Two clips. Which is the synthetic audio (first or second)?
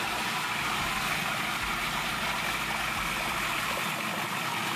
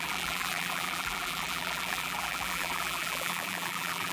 second